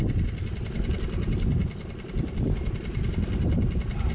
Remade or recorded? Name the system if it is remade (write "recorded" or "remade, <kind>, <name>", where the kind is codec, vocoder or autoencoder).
recorded